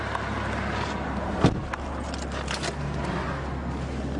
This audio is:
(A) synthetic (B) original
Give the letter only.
A